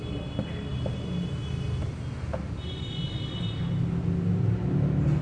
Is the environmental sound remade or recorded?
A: recorded